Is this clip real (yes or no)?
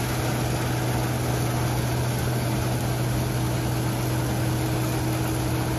yes